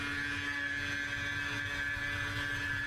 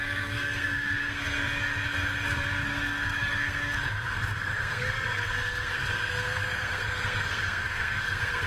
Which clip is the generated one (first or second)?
second